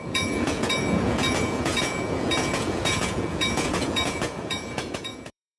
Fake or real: fake